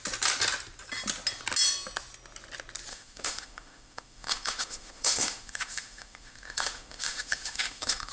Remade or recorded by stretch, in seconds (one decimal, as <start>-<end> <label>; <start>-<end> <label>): 0.0-2.9 recorded; 2.9-8.1 remade